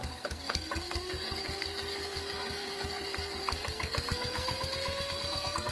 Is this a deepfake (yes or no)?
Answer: yes